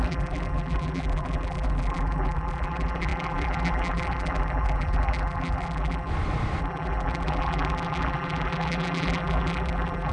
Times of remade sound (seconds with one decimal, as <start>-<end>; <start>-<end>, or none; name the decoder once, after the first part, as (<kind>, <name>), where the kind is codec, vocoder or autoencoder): 0.0-6.1 (vocoder, BigVGAN v2); 6.6-10.1